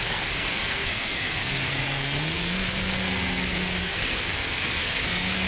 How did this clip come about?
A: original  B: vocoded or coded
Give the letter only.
B